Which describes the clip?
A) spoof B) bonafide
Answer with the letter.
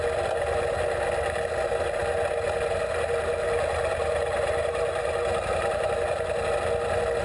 B